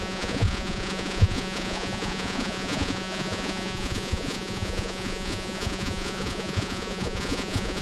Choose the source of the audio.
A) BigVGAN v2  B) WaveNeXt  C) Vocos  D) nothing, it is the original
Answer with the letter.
C